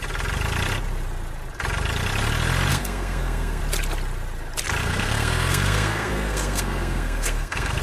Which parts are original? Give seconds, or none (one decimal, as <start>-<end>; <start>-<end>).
0.0-2.7; 3.6-4.8